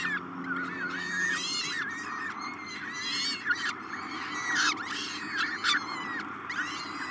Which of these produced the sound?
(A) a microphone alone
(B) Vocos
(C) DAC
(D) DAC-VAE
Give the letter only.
A